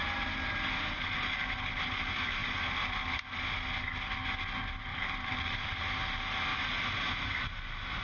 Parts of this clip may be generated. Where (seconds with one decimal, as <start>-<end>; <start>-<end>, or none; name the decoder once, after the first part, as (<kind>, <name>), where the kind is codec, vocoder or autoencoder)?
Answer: 4.9-5.8 (vocoder, BigVGAN v2)